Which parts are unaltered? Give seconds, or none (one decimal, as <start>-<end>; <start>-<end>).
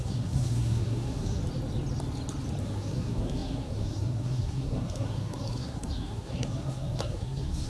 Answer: 1.4-2.6